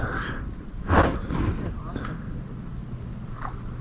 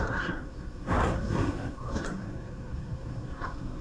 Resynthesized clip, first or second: second